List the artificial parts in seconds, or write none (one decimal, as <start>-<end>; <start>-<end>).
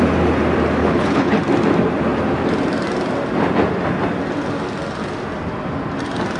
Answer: 0.8-1.4